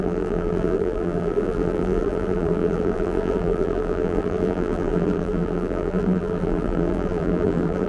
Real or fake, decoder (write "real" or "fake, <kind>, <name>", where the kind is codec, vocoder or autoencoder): fake, vocoder, BigVGAN v2